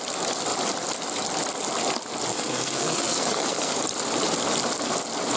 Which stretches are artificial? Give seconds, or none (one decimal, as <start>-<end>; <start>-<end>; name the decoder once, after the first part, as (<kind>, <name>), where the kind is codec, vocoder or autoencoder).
2.3-3.8 (codec, SNAC)